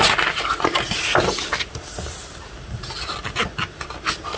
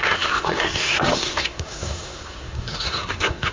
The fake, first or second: second